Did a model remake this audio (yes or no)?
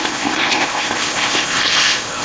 yes